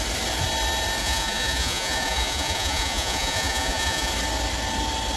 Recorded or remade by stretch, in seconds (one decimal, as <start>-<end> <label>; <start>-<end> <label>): 0.0-1.0 recorded; 1.0-4.1 remade; 4.1-5.2 recorded